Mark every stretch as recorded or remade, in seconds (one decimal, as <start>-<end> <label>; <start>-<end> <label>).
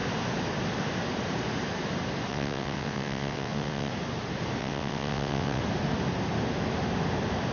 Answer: 0.0-2.3 recorded; 2.3-3.9 remade; 3.9-4.6 recorded; 4.6-5.6 remade; 5.6-7.5 recorded